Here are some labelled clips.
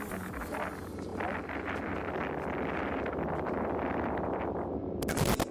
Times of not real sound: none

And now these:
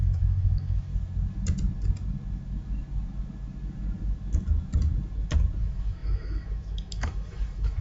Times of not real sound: 0.0-0.9 (autoencoder, DAC-VAE); 5.6-7.8